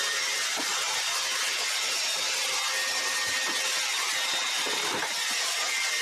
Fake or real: real